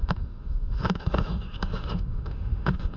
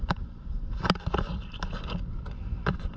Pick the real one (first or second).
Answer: second